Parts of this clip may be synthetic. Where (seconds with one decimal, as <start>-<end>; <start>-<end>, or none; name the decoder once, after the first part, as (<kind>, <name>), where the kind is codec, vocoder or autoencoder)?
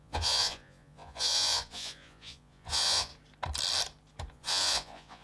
0.0-3.1 (vocoder, Vocos); 4.3-5.2